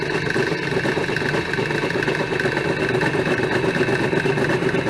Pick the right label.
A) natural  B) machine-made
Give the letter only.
A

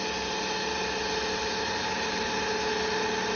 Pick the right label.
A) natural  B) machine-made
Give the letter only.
A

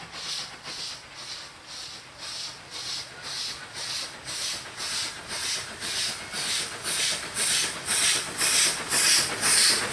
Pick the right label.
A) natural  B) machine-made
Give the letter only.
A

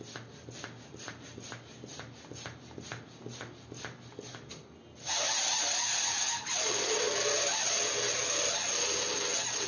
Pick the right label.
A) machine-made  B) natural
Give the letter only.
B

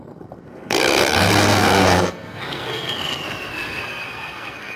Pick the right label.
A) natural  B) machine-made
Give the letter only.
B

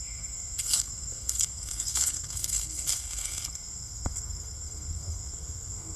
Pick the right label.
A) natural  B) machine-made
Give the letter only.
B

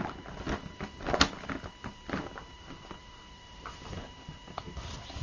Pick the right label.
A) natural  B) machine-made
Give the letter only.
A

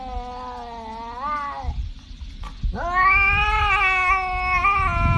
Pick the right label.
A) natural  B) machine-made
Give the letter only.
A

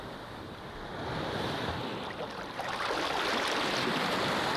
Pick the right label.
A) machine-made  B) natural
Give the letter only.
B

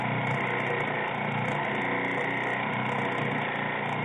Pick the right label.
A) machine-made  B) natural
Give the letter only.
B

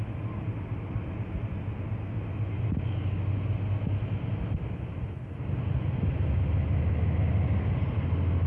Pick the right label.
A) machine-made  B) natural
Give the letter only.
B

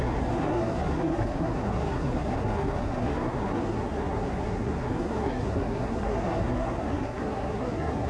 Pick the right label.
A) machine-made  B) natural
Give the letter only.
A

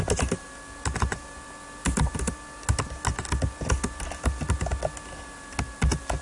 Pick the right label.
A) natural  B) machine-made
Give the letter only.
A